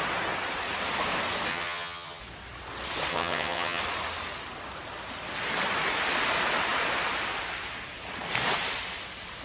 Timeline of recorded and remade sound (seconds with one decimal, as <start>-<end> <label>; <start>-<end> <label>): 0.0-1.5 recorded; 1.5-2.2 remade; 2.2-3.1 recorded; 3.1-3.8 remade; 3.8-9.4 recorded